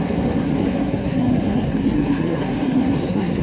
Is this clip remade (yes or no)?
yes